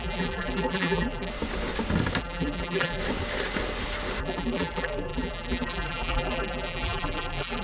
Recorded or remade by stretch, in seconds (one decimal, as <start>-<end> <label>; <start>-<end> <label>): 0.0-1.3 remade; 1.3-2.2 recorded; 2.2-3.0 remade; 3.0-4.2 recorded; 4.2-7.6 remade